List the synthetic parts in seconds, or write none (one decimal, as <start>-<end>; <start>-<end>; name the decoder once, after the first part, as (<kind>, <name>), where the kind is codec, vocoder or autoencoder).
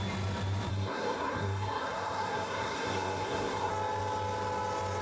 0.7-3.7 (codec, SNAC)